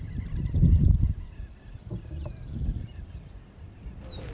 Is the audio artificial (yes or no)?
no